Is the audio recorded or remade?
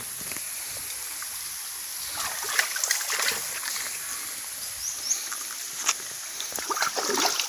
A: recorded